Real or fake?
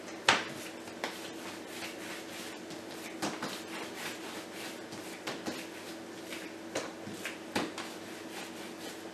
real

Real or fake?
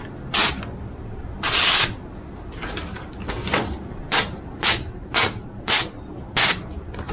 real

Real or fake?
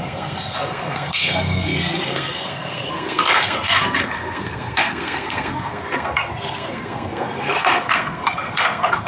fake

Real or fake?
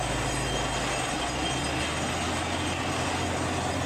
real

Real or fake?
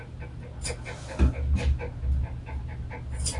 real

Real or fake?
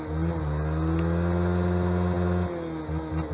real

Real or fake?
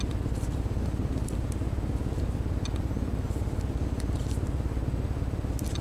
real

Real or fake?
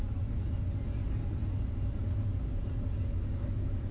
real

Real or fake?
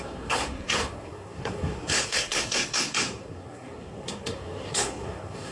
fake